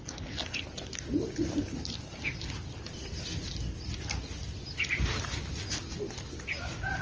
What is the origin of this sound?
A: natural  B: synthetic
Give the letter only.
A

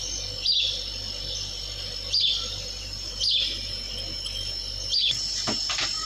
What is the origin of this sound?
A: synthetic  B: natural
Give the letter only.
B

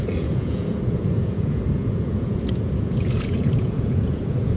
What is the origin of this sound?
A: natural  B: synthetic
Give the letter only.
B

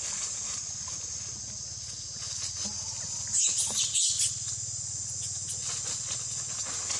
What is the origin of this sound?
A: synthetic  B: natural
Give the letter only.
B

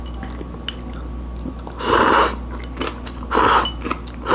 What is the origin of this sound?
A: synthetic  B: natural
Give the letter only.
B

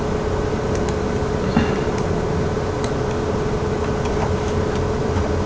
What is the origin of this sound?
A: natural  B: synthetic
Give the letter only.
A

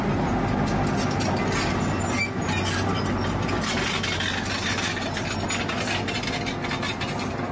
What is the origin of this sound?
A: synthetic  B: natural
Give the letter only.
B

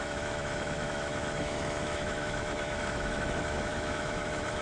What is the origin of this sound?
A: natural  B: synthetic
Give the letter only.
B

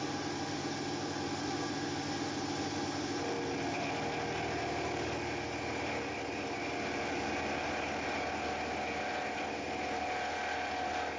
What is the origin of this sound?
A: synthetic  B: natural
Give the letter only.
B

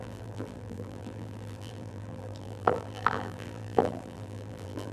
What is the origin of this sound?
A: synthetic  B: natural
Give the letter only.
A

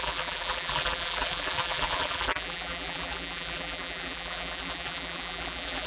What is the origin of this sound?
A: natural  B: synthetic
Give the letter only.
B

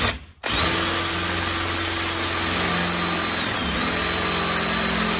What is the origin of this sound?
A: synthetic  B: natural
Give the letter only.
B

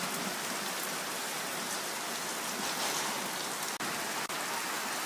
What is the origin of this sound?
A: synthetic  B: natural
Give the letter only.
B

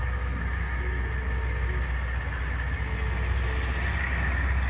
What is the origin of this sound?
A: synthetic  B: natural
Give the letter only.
B